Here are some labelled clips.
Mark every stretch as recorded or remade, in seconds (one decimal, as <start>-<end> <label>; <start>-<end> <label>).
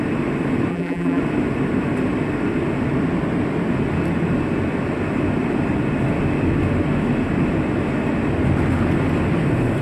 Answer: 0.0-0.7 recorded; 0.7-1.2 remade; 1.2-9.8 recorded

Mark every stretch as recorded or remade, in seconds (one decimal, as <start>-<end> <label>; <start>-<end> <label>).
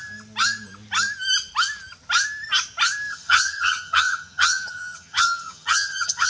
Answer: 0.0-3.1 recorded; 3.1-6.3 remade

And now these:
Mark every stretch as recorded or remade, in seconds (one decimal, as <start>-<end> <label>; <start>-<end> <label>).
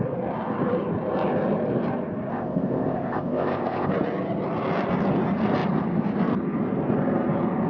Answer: 0.0-2.3 recorded; 2.3-3.9 remade; 3.9-7.7 recorded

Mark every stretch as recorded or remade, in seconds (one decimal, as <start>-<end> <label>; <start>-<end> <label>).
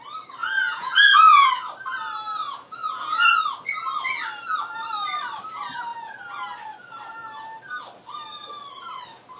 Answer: 0.0-0.4 recorded; 0.4-1.5 remade; 1.5-2.4 recorded; 2.4-3.3 remade; 3.3-9.4 recorded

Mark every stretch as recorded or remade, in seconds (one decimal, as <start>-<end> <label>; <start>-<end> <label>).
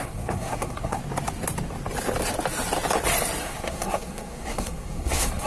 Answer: 0.0-1.0 remade; 1.0-3.4 recorded; 3.4-5.5 remade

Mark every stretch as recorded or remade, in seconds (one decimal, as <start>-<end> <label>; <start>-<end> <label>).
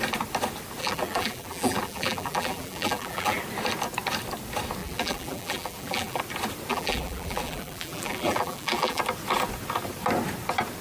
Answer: 0.0-0.8 recorded; 0.8-3.4 remade; 3.4-4.8 recorded; 4.8-6.2 remade; 6.2-6.7 recorded; 6.7-9.0 remade; 9.0-10.8 recorded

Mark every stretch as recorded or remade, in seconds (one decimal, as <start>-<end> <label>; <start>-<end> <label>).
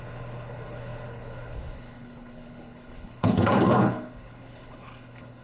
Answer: 0.0-5.4 remade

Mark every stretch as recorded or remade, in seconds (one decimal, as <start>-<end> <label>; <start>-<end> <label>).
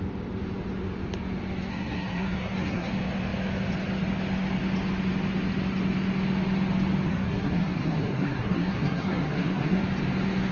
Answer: 0.0-1.7 recorded; 1.7-2.9 remade; 2.9-7.1 recorded; 7.1-9.8 remade; 9.8-10.5 recorded